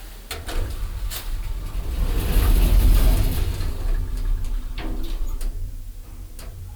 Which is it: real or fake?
fake